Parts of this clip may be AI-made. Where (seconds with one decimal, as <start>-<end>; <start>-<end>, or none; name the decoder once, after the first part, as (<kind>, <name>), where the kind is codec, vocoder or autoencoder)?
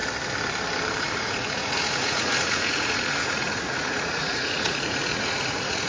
1.0-5.9 (vocoder, Vocos)